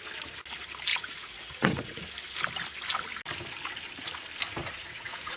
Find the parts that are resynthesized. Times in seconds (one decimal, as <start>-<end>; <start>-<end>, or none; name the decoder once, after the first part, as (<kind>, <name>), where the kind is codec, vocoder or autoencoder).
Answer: 0.9-2.0 (vocoder, Vocos); 4.6-5.4